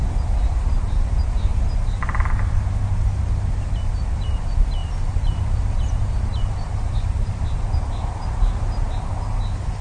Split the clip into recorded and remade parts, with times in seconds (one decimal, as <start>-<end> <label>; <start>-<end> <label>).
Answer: 0.0-4.8 recorded; 4.8-7.7 remade; 7.7-9.8 recorded